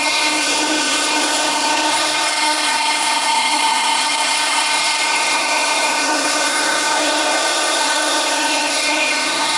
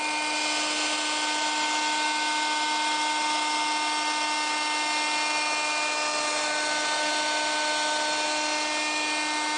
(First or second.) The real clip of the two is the second